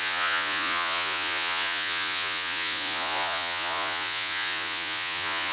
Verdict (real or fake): fake